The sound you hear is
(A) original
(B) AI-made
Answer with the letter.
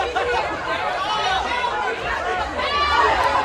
B